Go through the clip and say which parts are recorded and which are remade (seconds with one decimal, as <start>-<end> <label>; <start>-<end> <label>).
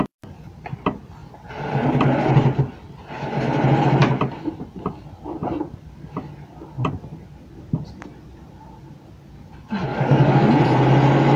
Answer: 0.0-9.9 recorded; 9.9-10.5 remade; 10.5-11.4 recorded